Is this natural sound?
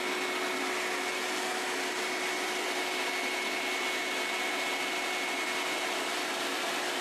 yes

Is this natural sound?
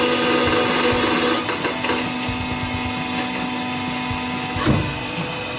yes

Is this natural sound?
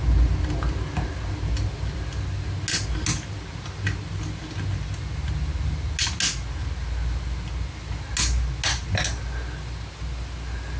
yes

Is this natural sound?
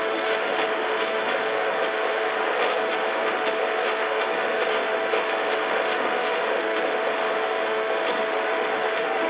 no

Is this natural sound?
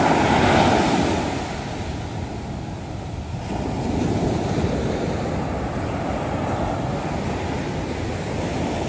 yes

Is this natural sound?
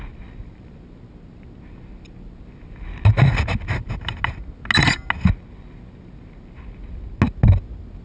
yes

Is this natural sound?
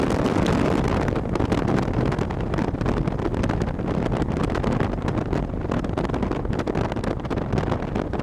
yes